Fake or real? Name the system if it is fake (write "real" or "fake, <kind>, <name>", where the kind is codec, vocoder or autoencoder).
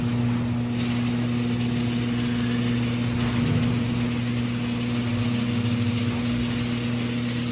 real